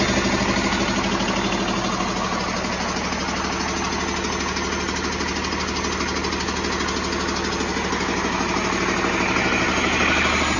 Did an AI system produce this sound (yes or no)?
no